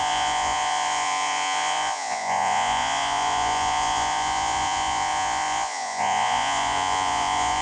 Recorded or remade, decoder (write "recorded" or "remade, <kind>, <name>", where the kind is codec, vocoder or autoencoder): remade, vocoder, Vocos